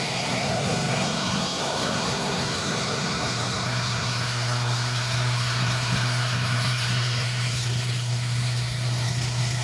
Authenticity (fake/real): fake